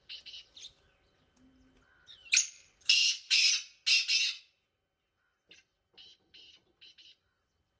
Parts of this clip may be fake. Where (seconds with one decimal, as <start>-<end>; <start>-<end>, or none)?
none